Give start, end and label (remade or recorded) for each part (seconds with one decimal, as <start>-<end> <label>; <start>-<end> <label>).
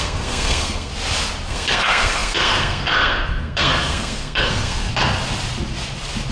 0.0-0.9 remade; 0.9-1.5 recorded; 1.5-4.9 remade; 4.9-6.3 recorded